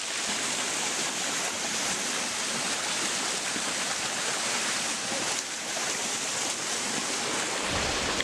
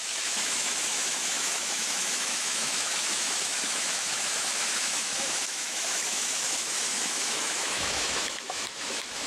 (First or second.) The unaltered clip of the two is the first